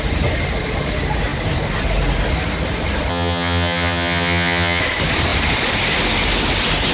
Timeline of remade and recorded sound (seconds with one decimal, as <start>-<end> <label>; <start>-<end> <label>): 0.0-3.1 recorded; 3.1-4.8 remade; 4.8-6.9 recorded